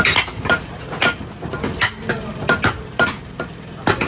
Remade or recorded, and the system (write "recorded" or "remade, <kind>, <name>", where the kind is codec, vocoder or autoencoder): recorded